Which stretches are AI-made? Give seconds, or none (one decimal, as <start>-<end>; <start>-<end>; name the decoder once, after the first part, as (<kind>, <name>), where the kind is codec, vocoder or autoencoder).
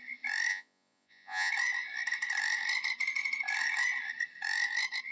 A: 0.5-1.5 (vocoder, Vocos)